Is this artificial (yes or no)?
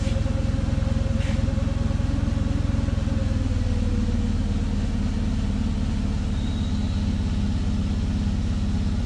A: no